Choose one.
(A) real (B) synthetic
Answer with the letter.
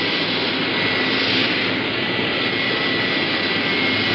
A